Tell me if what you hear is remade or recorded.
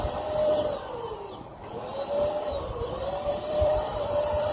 remade